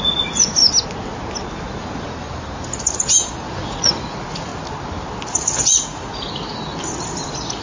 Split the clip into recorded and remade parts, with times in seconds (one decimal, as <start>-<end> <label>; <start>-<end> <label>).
0.0-0.6 remade; 0.6-3.5 recorded; 3.5-4.5 remade; 4.5-5.6 recorded; 5.6-6.1 remade; 6.1-7.6 recorded